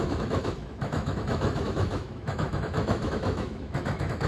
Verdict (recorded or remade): remade